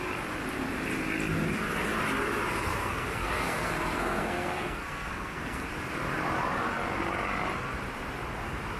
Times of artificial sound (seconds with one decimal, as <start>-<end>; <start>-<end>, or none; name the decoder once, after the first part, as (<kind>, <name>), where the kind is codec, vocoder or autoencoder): 2.8-5.7 (codec, SNAC)